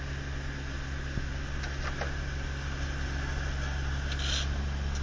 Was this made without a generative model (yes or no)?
yes